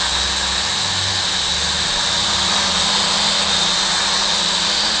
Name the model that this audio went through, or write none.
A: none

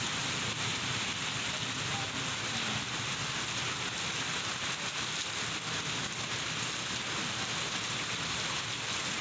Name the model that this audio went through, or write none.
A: none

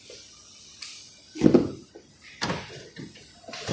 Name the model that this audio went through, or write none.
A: none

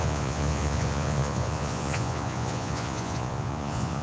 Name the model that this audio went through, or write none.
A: vocoder, Vocos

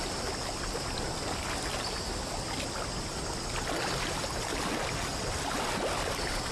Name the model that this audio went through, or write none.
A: none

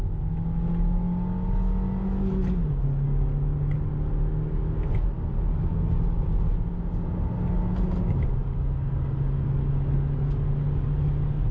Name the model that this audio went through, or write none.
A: none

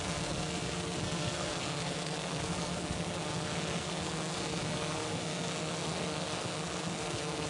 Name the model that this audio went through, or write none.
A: codec, SNAC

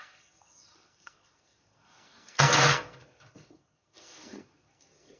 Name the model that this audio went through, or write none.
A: codec, SNAC